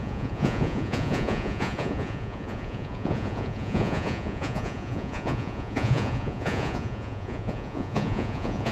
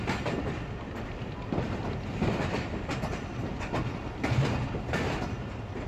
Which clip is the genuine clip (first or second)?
second